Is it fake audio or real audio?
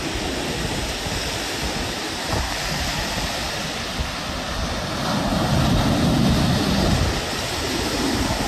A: real